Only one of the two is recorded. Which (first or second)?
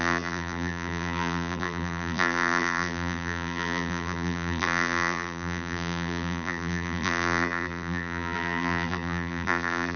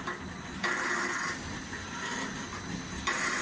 second